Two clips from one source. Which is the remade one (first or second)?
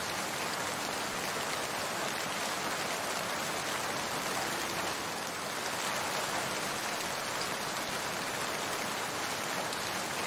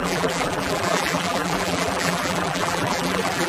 second